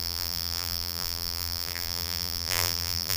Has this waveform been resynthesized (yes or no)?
yes